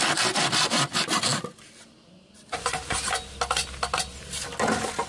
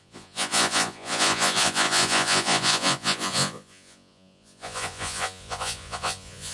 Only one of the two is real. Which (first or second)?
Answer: first